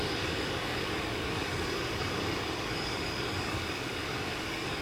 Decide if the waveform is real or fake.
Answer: fake